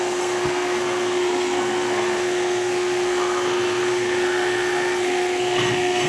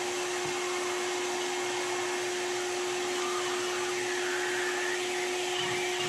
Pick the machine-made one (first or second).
first